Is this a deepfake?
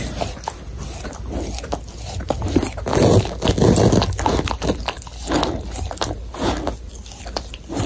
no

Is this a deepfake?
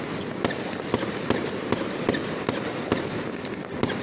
no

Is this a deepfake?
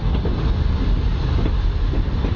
no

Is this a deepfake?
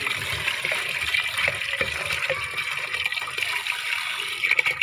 no